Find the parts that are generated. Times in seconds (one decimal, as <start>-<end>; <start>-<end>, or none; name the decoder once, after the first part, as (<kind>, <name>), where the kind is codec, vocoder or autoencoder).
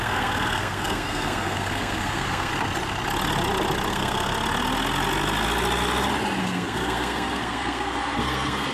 0.0-2.5 (codec, SNAC); 3.9-4.3; 6.4-8.7